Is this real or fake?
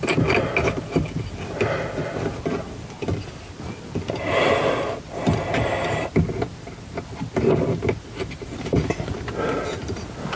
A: real